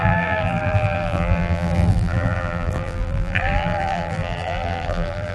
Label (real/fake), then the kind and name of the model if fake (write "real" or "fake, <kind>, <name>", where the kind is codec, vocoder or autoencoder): fake, vocoder, BigVGAN v2